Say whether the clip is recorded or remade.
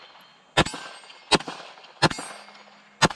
recorded